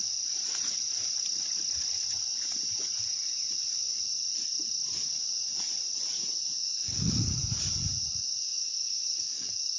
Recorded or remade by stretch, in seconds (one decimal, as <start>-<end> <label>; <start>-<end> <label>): 0.0-6.6 recorded; 6.6-7.6 remade; 7.6-8.5 recorded; 8.5-9.8 remade

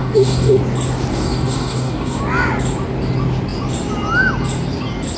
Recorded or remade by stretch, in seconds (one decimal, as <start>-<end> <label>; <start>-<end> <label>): 0.0-0.6 remade; 0.6-1.1 recorded; 1.1-2.2 remade; 2.2-5.2 recorded

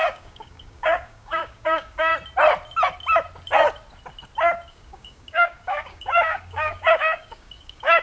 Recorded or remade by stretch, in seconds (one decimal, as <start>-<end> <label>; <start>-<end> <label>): 0.0-2.1 remade; 2.1-4.7 recorded; 4.7-8.0 remade

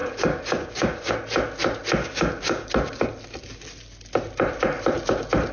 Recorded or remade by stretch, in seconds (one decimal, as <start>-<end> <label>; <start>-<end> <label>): 0.0-1.1 remade; 1.1-2.0 recorded; 2.0-2.7 remade; 2.7-5.5 recorded

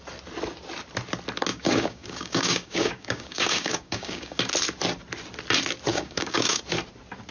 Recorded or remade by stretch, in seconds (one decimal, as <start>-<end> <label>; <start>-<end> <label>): 0.0-1.5 recorded; 1.5-4.4 remade; 4.4-5.9 recorded; 5.9-6.6 remade; 6.6-7.3 recorded

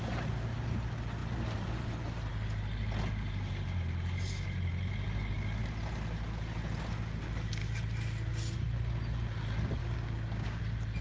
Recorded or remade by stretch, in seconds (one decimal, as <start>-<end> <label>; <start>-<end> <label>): 0.0-9.8 recorded; 9.8-10.6 remade; 10.6-11.0 recorded

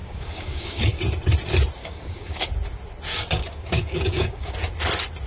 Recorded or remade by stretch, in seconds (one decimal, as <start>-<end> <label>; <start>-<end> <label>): 0.0-1.0 remade; 1.0-1.8 recorded; 1.8-2.5 remade; 2.5-3.1 recorded; 3.1-4.5 remade; 4.5-5.3 recorded

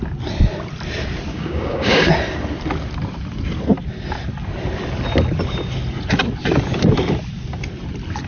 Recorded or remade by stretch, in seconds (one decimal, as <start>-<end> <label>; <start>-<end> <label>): 0.0-1.3 recorded; 1.3-2.1 remade; 2.1-8.3 recorded